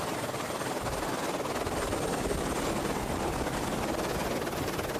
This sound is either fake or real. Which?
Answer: real